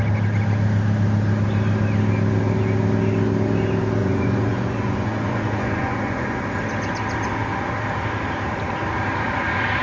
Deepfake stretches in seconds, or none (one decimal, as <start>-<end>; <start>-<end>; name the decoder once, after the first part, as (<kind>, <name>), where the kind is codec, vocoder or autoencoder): 4.0-6.4 (vocoder, Vocos)